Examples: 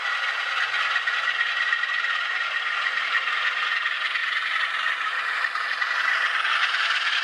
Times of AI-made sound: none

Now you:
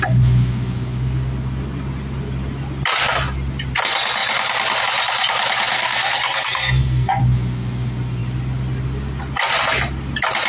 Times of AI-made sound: 5.7-7.2 (codec, SNAC)

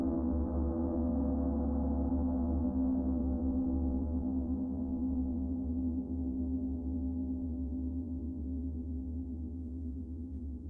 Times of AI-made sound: 0.0-1.1 (vocoder, BigVGAN v2); 2.1-10.7